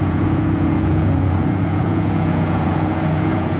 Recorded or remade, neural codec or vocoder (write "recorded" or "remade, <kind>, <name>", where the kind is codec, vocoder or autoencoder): remade, vocoder, Vocos